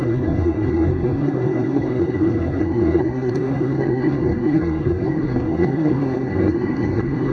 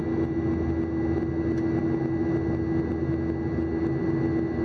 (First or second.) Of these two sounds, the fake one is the first